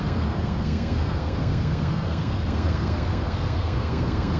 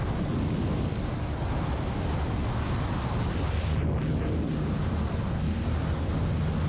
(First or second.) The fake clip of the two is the first